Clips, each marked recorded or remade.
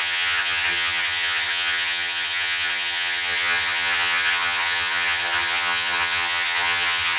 remade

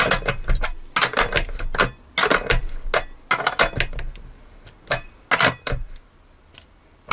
recorded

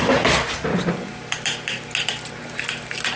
recorded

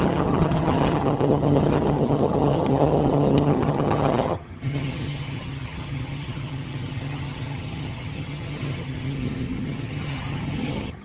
remade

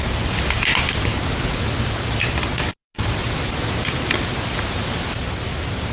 recorded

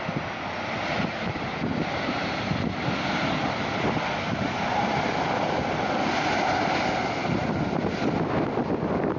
recorded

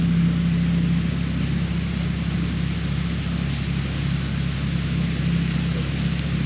recorded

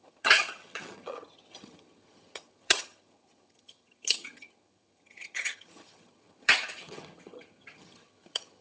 remade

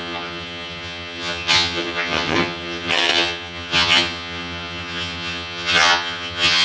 remade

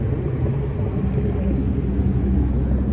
recorded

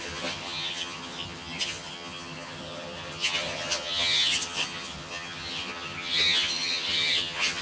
remade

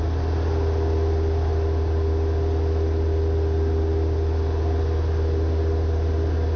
recorded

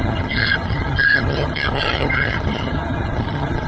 remade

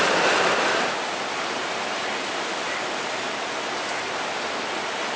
recorded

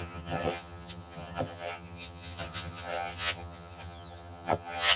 remade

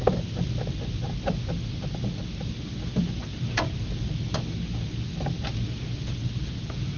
recorded